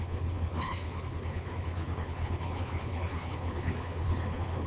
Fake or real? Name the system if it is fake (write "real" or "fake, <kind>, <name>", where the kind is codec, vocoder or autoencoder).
fake, codec, HILCodec